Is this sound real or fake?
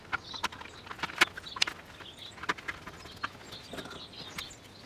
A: real